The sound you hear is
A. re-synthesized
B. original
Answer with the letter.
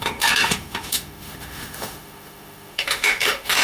A